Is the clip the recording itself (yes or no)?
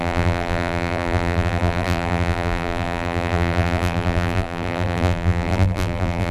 no